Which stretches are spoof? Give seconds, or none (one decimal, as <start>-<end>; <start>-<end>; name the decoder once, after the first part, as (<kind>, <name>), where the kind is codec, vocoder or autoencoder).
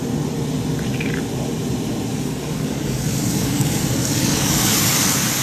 2.1-5.4 (codec, DAC)